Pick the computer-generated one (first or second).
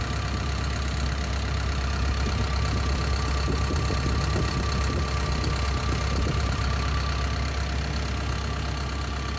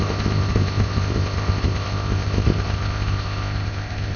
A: second